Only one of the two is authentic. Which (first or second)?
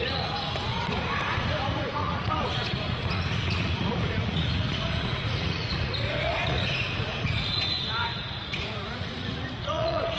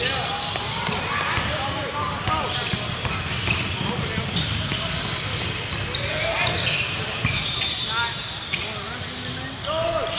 second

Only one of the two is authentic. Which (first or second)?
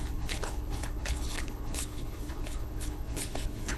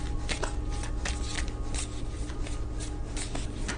second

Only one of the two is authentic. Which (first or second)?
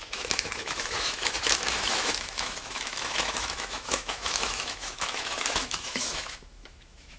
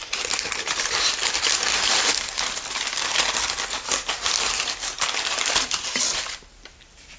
second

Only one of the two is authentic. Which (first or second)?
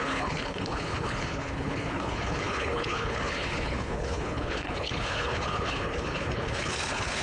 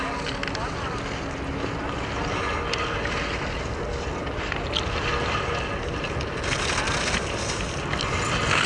second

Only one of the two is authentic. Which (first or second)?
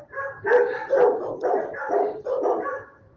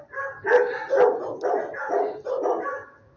second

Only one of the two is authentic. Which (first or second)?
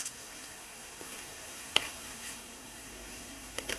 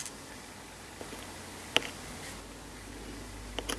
second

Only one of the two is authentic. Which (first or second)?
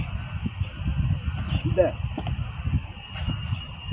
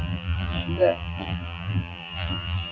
first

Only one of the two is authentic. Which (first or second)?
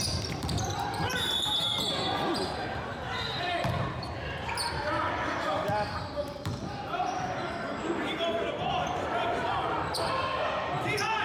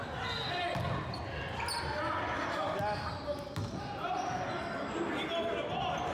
second